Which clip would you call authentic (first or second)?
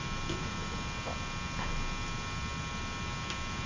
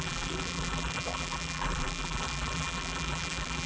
first